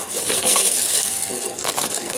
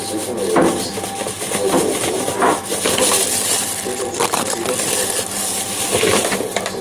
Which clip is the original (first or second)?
second